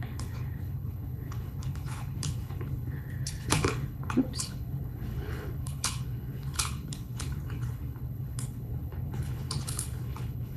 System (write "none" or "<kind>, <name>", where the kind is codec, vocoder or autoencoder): codec, HILCodec